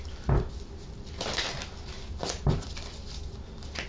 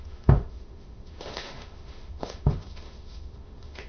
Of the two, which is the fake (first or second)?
second